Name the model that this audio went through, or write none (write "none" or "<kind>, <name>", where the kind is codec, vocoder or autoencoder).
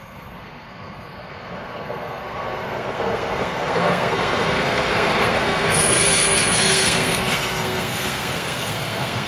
codec, SNAC